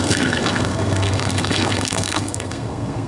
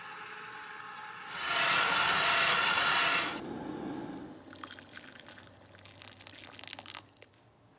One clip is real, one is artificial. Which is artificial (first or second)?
first